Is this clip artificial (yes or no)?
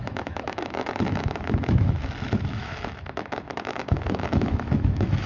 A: yes